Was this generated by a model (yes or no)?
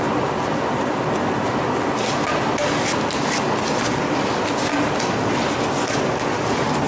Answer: no